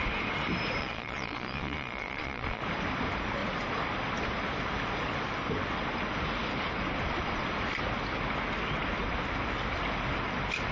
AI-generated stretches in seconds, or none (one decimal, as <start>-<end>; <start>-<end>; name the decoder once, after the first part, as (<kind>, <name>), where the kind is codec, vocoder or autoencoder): 0.8-2.6 (vocoder, Vocos)

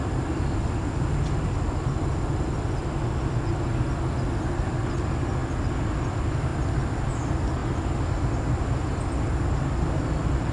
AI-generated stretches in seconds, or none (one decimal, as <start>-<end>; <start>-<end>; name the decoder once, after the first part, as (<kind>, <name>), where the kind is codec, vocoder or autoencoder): none

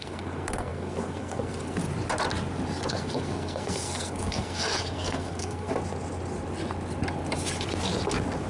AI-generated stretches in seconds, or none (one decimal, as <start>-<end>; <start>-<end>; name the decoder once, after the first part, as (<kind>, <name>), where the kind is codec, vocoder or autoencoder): 0.0-1.8 (codec, SNAC); 2.9-5.7